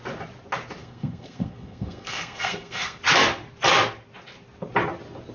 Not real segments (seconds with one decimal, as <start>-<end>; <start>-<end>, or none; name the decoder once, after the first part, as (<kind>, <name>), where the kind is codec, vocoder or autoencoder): 0.8-3.0 (codec, SNAC)

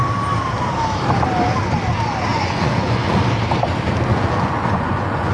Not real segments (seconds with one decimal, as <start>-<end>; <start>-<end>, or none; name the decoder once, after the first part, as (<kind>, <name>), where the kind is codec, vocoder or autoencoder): 2.3-3.2 (vocoder, Vocos); 4.1-5.3

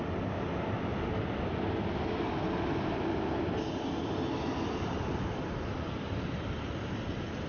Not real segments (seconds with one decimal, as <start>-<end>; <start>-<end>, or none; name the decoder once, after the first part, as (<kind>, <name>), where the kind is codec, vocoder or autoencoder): none

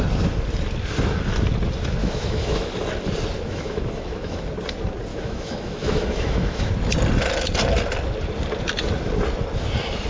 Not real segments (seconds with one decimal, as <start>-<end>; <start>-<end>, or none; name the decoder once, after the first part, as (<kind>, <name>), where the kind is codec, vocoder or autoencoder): 2.0-2.7 (autoencoder, DAC-VAE); 3.5-4.4; 5.1-6.7

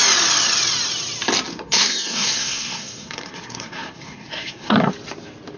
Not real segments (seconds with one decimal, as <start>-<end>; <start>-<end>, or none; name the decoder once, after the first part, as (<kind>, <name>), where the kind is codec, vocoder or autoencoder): 1.5-4.9 (codec, SNAC)

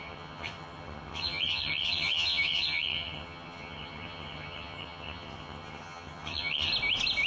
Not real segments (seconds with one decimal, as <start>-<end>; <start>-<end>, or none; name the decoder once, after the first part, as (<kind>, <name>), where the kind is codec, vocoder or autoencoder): 0.0-6.7 (vocoder, HiFi-GAN)

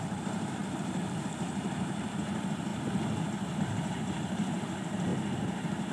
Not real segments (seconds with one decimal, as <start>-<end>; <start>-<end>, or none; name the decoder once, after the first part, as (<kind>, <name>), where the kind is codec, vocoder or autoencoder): 0.0-2.7 (vocoder, BigVGAN v2); 3.6-5.9

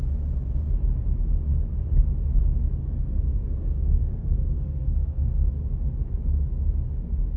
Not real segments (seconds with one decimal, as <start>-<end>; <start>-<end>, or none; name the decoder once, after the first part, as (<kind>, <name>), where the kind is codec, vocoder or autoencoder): 2.8-5.5 (codec, SNAC)